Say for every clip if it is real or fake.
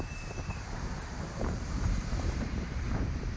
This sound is fake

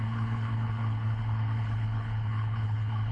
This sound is fake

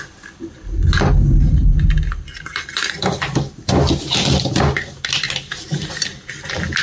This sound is real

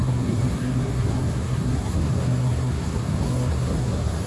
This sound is fake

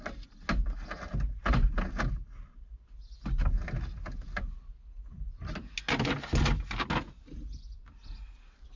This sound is real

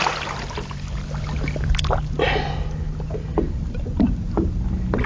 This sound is real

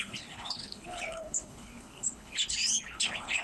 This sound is fake